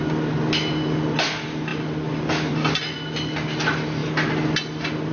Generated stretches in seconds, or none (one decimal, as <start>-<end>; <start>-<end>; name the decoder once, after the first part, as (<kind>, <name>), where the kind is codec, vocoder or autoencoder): none